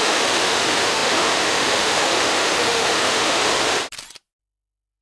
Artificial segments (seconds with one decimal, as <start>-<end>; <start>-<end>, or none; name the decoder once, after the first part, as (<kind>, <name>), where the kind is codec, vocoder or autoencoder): 0.0-3.5 (autoencoder, DAC-VAE); 4.4-5.0